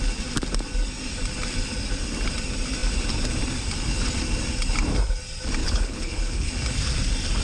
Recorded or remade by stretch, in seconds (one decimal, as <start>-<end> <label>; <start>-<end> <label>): 0.0-5.6 recorded; 5.6-6.5 remade; 6.5-7.4 recorded